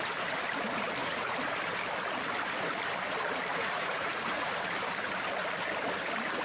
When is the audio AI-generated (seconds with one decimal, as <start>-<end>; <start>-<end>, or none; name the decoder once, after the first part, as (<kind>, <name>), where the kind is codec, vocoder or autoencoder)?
1.0-1.5 (vocoder, Vocos); 3.5-4.6